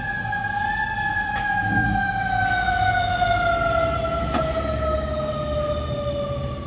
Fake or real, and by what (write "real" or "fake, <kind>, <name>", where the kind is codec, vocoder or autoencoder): real